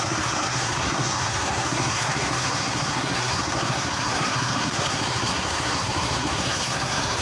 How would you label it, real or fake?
fake